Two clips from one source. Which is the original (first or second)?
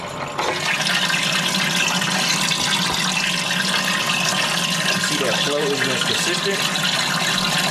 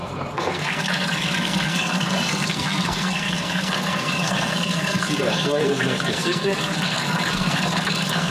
first